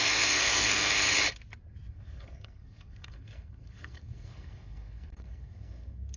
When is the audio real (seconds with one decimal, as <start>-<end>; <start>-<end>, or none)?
1.0-1.9